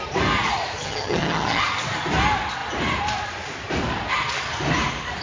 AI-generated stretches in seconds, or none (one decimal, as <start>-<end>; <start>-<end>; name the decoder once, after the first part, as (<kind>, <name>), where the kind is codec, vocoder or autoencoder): 0.8-1.6 (vocoder, HiFi-GAN)